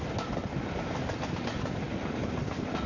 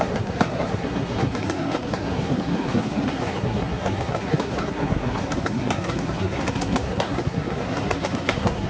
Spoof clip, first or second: second